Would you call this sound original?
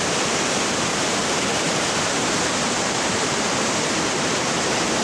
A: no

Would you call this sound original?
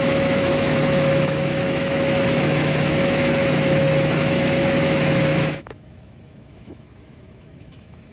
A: no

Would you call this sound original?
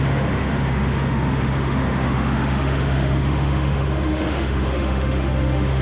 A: no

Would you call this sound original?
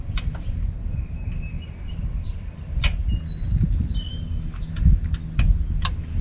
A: yes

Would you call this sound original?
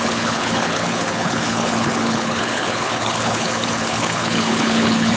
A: no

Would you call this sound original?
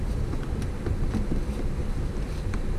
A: no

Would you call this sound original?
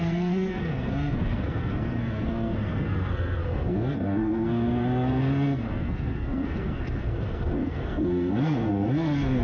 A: no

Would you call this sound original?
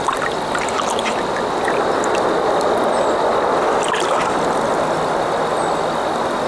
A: yes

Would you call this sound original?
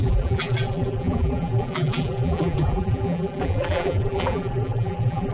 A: no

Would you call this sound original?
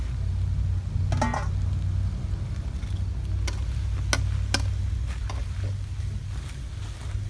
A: yes